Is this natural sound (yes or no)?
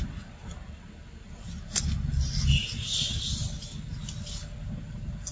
yes